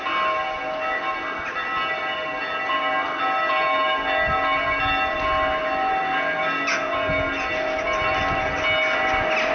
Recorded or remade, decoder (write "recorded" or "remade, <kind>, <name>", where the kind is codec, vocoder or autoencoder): recorded